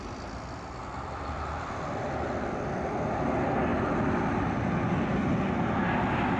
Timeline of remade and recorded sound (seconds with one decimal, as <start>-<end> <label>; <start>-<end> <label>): 0.0-6.4 recorded